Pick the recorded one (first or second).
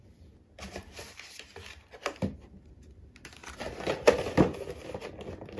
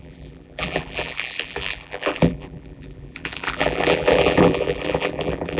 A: first